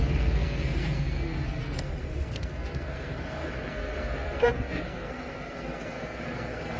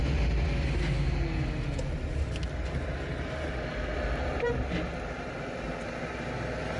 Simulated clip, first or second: first